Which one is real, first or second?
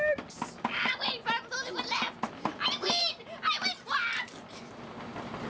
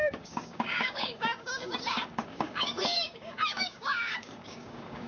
first